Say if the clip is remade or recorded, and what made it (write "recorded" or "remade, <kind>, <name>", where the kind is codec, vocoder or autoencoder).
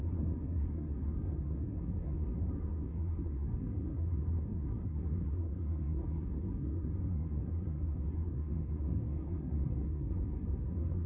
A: remade, codec, SNAC